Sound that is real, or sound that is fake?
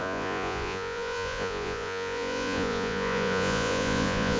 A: fake